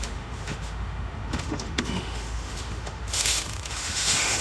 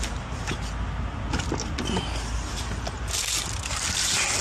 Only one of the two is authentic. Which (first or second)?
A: second